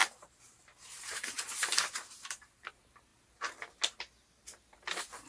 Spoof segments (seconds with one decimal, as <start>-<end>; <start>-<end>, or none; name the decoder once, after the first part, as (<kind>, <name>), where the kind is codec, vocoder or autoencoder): 0.0-2.7 (vocoder, BigVGAN v2)